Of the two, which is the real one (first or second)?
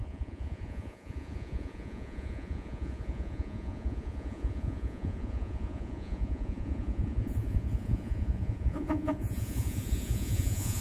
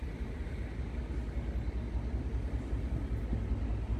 second